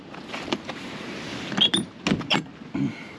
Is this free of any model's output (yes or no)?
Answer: yes